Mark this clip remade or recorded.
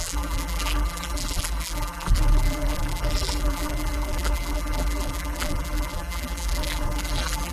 remade